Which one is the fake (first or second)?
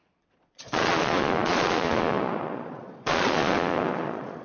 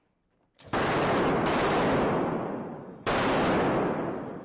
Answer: first